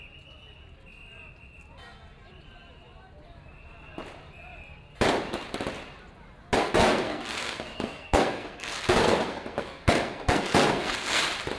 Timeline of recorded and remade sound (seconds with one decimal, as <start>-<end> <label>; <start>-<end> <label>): 0.0-6.6 recorded; 6.6-11.2 remade; 11.2-11.6 recorded